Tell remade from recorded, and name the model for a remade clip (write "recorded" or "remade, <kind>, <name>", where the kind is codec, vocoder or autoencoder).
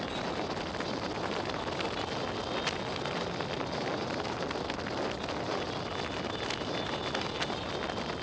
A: recorded